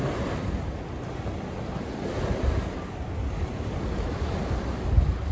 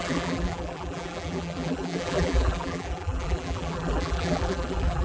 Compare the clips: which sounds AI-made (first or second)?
second